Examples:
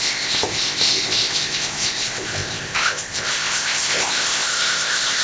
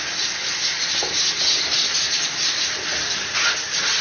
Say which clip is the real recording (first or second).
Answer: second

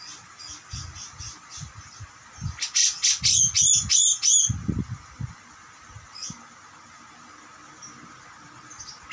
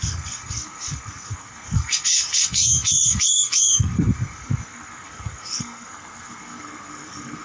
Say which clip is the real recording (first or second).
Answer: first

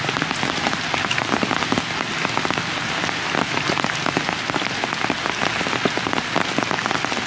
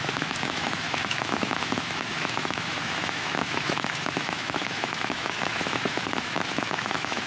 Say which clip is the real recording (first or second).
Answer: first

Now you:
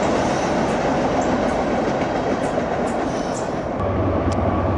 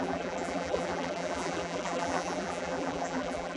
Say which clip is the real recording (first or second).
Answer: first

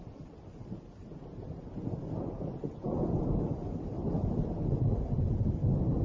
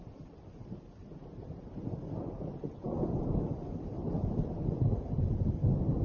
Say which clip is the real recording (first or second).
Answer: first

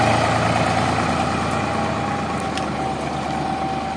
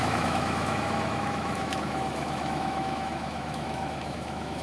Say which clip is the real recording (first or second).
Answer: first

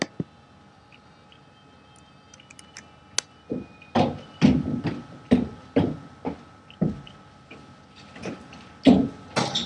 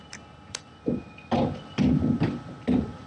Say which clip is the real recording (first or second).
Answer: first